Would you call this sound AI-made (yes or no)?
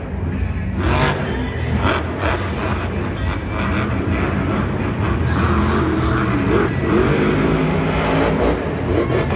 no